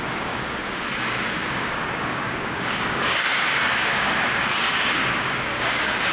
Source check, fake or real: fake